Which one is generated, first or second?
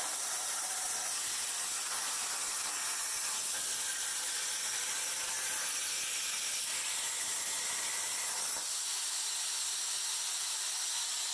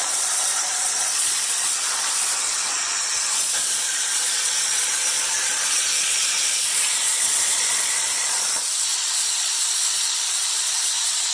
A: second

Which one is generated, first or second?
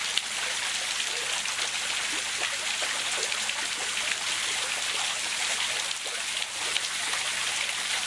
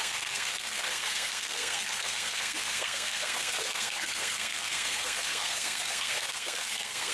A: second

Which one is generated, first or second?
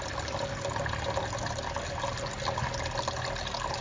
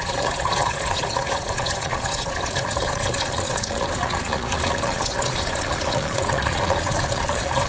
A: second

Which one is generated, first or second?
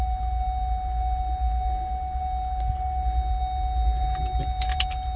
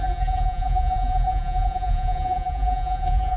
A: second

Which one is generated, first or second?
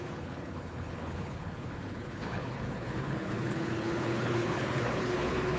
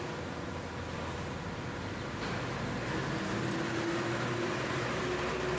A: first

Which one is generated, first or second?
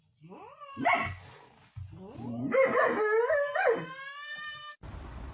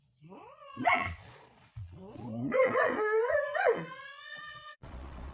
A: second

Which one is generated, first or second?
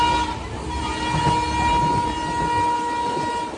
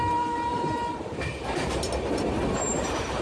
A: second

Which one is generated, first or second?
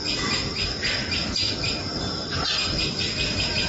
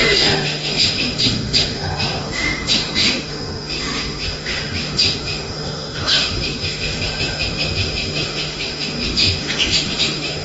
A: second